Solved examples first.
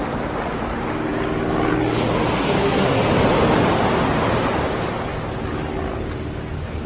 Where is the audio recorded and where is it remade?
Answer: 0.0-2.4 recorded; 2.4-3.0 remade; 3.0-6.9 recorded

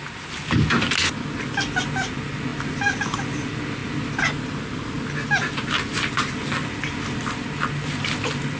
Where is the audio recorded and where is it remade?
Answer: 0.0-8.6 recorded

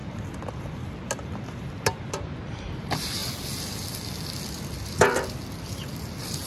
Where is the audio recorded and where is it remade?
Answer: 0.0-6.5 recorded